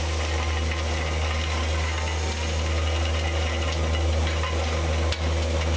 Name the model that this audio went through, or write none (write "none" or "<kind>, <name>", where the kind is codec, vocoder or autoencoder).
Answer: none